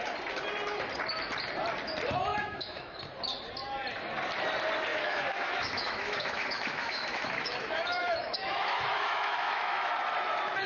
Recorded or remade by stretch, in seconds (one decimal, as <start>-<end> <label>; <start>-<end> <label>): 0.0-2.3 recorded; 2.3-3.0 remade; 3.0-4.9 recorded; 4.9-9.9 remade; 9.9-10.7 recorded